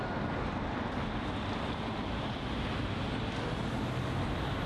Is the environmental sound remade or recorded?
remade